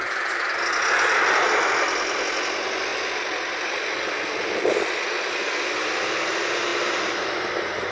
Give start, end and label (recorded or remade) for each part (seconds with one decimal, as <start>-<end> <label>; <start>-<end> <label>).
0.0-7.9 recorded